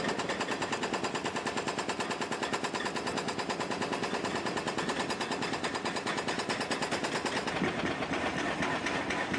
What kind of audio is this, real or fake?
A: real